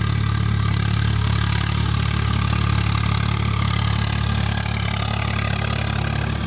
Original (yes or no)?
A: yes